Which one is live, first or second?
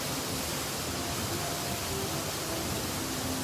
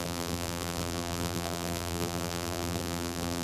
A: first